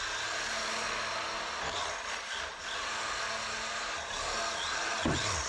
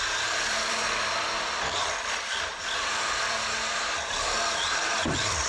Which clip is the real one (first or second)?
first